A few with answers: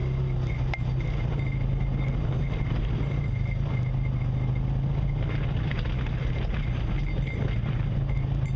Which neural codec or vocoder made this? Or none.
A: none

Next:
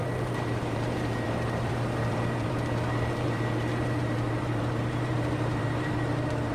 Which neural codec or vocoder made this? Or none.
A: vocoder, BigVGAN v2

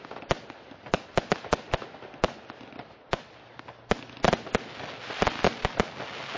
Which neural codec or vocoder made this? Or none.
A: none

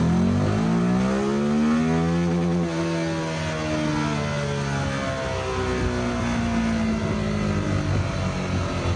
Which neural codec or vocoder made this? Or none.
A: none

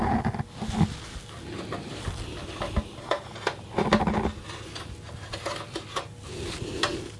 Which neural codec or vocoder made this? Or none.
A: none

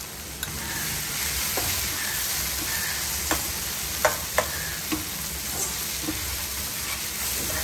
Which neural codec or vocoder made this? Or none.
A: none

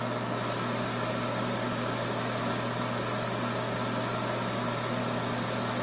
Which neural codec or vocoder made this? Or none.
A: none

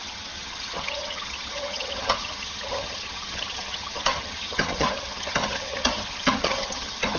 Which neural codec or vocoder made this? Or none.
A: vocoder, HiFi-GAN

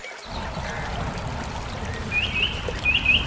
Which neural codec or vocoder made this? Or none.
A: none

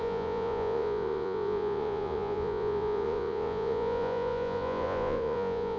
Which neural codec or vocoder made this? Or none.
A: vocoder, Vocos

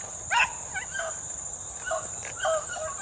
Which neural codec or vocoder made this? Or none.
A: none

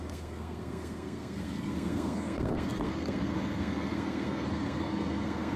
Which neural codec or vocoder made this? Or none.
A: codec, SNAC